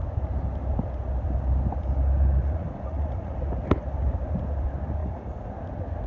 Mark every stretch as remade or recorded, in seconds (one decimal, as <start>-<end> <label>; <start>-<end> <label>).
0.0-2.4 recorded; 2.4-3.4 remade; 3.4-5.0 recorded; 5.0-5.6 remade; 5.6-6.1 recorded